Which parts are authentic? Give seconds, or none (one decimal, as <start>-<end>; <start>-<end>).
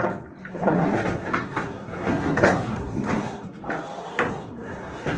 0.0-0.5; 3.6-4.1